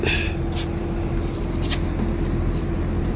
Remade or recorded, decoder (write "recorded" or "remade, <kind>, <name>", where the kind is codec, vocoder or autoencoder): recorded